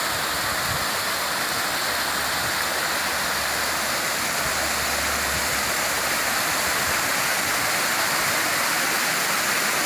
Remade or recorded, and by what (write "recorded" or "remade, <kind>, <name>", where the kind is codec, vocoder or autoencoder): recorded